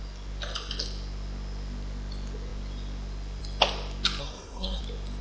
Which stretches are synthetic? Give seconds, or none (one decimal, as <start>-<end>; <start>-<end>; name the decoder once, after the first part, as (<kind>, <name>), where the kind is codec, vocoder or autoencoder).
4.2-4.8 (codec, SNAC)